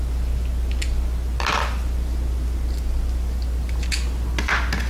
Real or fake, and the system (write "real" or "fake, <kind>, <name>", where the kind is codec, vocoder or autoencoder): real